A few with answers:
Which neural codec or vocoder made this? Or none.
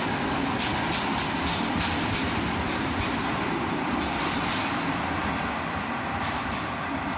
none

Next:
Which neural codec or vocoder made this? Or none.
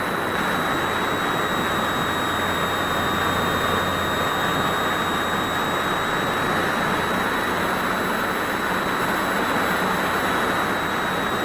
none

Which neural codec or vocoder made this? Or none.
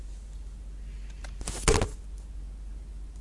none